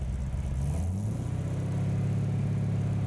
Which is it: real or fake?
real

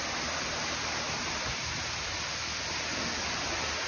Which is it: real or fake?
real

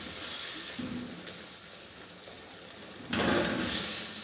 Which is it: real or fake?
real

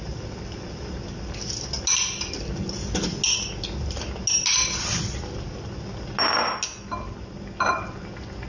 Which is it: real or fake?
real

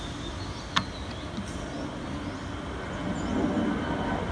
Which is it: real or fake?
real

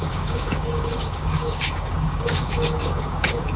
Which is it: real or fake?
fake